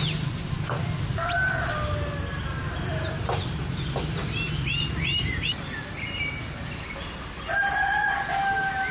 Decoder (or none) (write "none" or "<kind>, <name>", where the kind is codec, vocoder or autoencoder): none